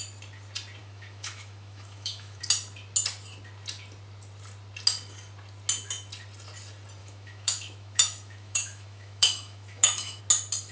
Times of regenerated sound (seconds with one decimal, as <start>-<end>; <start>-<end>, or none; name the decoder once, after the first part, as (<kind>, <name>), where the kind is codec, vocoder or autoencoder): 0.8-2.4 (autoencoder, DAC-VAE); 7.0-10.2